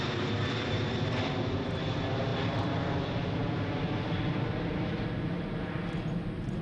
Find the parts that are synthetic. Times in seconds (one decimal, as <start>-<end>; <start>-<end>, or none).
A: none